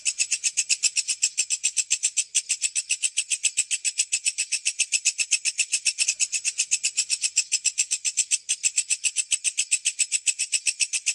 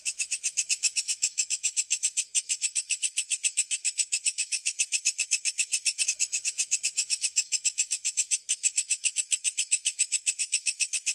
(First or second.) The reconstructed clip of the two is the second